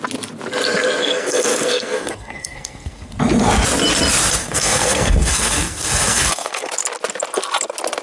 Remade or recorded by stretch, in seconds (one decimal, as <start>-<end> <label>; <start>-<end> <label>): 0.0-1.0 recorded; 1.0-3.1 remade; 3.1-4.4 recorded; 4.4-6.7 remade; 6.7-8.0 recorded